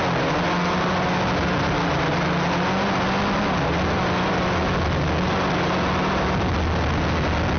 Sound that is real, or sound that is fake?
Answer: real